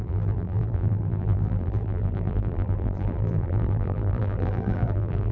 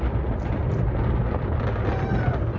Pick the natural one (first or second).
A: second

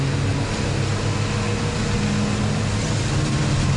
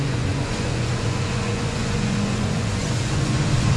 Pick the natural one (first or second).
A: first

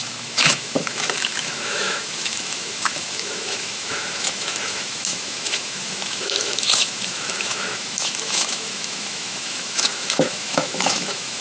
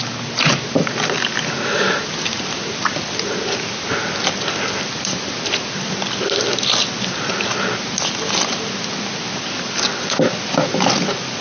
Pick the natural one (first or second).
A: second